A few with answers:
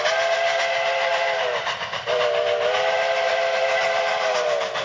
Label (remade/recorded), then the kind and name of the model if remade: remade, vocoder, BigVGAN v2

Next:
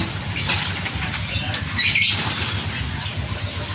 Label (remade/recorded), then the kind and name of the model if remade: recorded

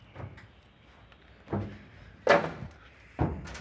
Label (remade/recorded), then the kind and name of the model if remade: recorded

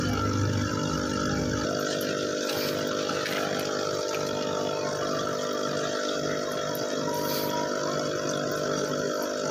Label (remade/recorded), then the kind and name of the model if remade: recorded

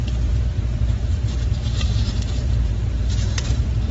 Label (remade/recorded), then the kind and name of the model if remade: remade, vocoder, BigVGAN v2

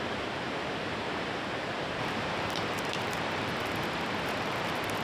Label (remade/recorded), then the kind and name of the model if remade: remade, vocoder, BigVGAN v2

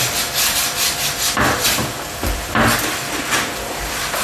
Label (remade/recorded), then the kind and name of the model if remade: remade, vocoder, BigVGAN v2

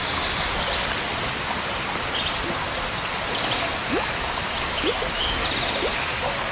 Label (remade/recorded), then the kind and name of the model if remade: recorded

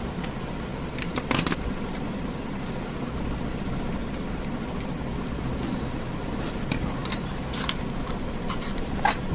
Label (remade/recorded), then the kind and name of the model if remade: recorded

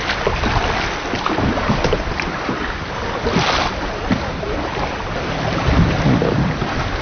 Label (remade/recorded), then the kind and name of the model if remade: recorded